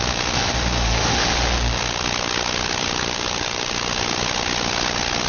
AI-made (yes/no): no